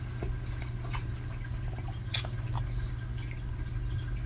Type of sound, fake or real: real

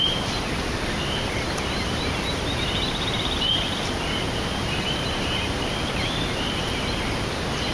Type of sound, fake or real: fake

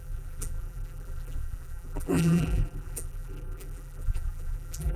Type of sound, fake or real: fake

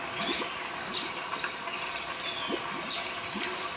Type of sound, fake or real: real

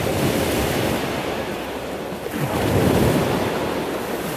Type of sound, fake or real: real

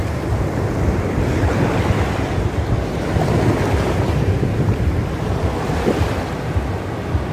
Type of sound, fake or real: real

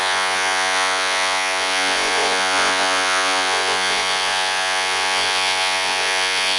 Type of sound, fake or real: fake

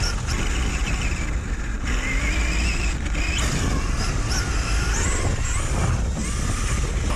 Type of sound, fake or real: real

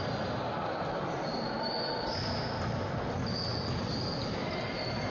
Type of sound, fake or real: real